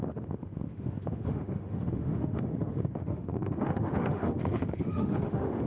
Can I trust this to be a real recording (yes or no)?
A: no